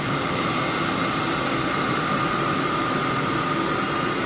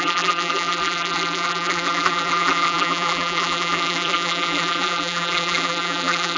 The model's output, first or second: second